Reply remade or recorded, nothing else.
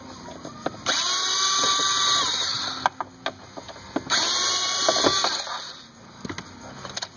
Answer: recorded